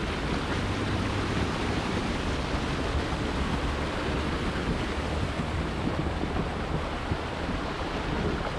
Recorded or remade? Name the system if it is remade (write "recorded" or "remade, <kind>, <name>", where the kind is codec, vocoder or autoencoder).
recorded